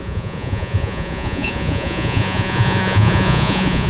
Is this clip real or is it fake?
fake